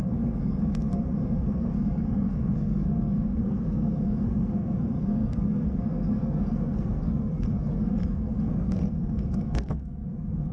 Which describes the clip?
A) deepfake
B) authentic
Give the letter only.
A